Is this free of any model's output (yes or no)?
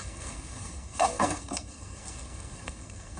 no